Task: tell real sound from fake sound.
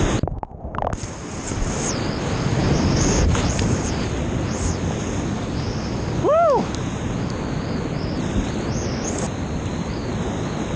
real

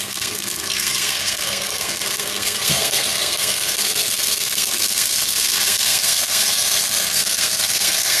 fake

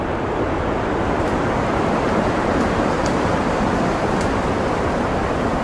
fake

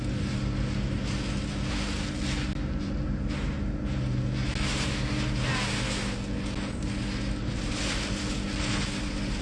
real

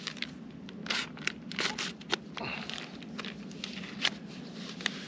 real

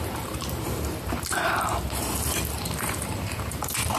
fake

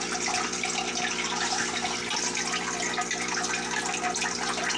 real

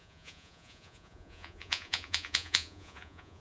fake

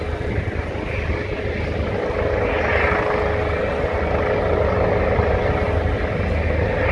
real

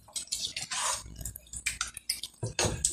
real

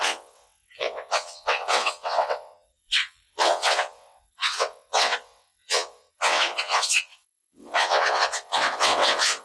fake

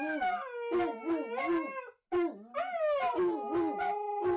real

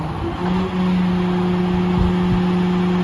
real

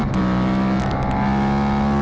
real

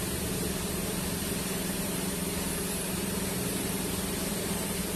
fake